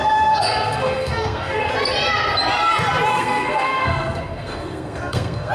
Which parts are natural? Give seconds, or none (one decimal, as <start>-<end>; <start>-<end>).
1.7-3.1

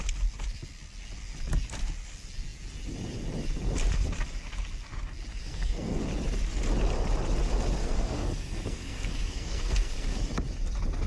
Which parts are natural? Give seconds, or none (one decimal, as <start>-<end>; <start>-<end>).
0.0-5.3; 6.0-7.8; 10.2-11.1

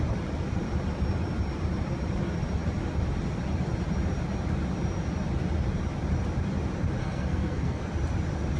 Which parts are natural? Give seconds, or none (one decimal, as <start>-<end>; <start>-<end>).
0.0-7.0; 7.8-8.6

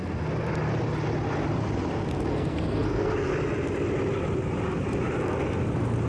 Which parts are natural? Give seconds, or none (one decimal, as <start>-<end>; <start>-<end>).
0.0-2.3; 3.3-6.1